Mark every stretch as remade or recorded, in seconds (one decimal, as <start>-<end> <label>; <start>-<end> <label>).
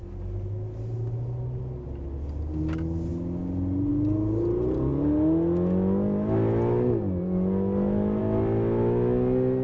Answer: 0.0-9.6 recorded